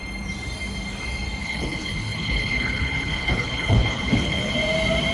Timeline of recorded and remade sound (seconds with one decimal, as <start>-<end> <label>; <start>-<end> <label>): 0.0-1.4 recorded; 1.4-4.5 remade; 4.5-5.1 recorded